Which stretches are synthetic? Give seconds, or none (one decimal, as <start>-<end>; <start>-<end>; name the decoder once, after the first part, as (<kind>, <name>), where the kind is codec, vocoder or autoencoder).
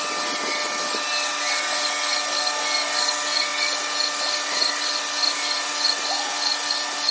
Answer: none